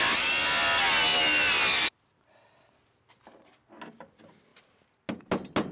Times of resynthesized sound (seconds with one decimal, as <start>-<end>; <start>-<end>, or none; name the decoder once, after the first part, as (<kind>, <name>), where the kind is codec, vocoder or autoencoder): 1.1-3.1 (vocoder, BigVGAN v2)